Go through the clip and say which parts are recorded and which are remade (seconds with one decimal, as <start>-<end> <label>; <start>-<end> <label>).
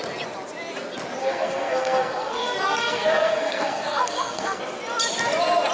0.0-1.2 recorded; 1.2-4.6 remade; 4.6-5.7 recorded